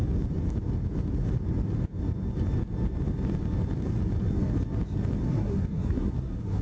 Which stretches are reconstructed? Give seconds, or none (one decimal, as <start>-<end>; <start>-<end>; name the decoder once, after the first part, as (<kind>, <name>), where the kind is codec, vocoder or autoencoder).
5.3-6.6 (codec, SNAC)